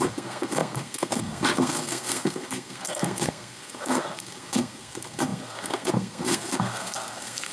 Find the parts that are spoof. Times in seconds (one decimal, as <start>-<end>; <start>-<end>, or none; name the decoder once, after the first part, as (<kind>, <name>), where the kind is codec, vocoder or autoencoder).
0.0-7.5 (codec, SNAC)